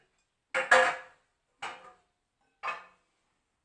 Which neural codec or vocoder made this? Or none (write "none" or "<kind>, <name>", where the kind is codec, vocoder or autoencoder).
none